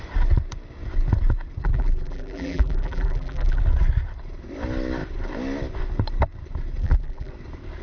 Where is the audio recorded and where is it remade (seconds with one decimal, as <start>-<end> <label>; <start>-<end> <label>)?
0.0-1.6 recorded; 1.6-3.6 remade; 3.6-6.8 recorded; 6.8-7.3 remade; 7.3-7.8 recorded